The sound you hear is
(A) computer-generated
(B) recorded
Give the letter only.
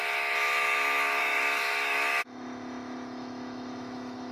A